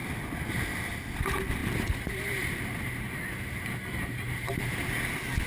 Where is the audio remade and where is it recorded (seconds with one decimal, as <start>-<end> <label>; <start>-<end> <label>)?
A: 0.0-1.6 recorded; 1.6-4.9 remade; 4.9-5.5 recorded